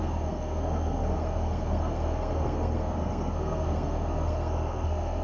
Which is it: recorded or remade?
remade